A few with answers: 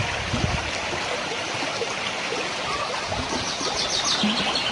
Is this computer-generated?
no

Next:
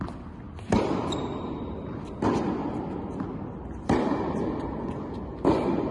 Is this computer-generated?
no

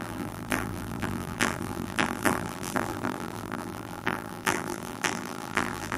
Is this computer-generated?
yes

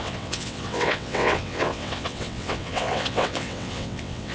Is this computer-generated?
yes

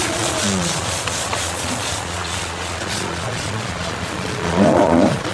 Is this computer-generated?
yes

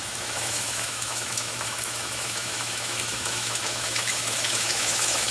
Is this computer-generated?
yes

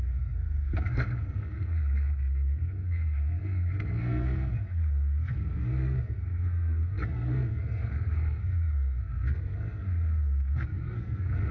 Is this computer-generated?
yes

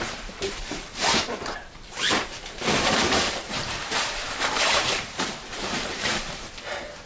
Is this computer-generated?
yes